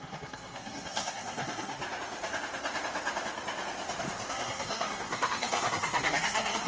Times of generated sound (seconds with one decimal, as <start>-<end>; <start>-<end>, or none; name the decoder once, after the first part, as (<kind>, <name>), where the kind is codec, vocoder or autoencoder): 0.0-1.8 (codec, SNAC); 4.3-6.7